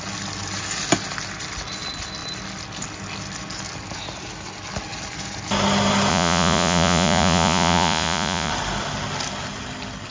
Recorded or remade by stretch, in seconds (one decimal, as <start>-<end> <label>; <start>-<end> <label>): 0.0-6.1 recorded; 6.1-8.5 remade; 8.5-10.1 recorded